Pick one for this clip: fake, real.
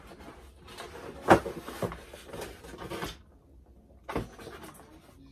real